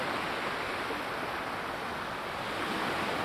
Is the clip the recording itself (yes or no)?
yes